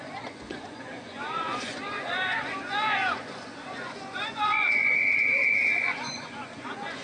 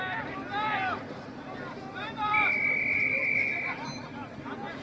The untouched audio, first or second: second